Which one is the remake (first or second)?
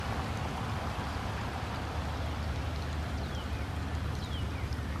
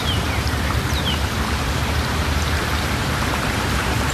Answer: second